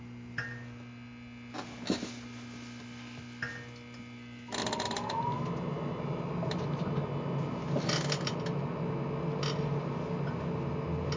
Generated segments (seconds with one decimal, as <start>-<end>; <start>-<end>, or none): 5.7-8.8